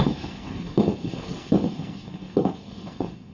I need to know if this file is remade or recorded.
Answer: remade